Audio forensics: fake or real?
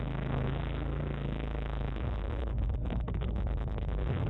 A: fake